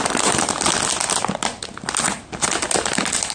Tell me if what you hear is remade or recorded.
recorded